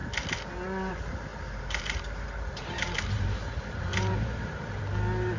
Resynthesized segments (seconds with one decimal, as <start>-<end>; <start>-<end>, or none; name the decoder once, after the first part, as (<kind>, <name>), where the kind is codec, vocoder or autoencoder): 1.3-3.0 (vocoder, BigVGAN v2); 3.9-4.8

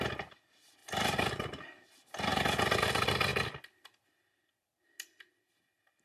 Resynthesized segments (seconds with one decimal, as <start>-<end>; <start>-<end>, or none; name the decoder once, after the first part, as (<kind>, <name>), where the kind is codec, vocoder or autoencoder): 0.8-1.6 (vocoder, BigVGAN v2)

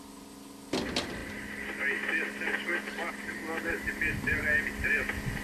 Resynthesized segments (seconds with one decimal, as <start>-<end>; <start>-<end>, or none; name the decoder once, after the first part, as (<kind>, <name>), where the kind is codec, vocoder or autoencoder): none

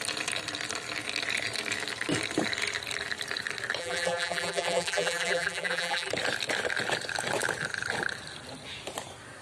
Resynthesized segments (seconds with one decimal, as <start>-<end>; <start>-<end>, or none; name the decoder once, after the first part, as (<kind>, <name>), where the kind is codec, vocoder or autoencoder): 3.8-6.1 (vocoder, BigVGAN v2)

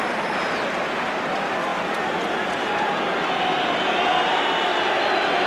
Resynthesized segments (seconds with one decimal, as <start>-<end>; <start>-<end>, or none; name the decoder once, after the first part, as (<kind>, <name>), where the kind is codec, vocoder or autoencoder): 4.7-5.5 (vocoder, BigVGAN v2)

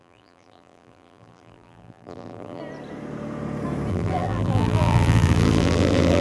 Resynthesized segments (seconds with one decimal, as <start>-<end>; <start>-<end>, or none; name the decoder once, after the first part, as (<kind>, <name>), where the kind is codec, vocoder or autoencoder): 0.0-2.6 (vocoder, BigVGAN v2); 3.9-6.2

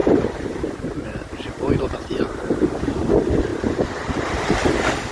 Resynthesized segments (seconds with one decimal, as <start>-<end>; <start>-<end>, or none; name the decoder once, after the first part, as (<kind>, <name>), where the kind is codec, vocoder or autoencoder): 0.0-3.1 (vocoder, BigVGAN v2)

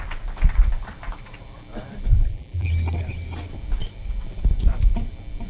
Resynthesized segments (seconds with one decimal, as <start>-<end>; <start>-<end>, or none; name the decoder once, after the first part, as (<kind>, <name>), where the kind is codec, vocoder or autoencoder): 2.1-2.7 (vocoder, BigVGAN v2)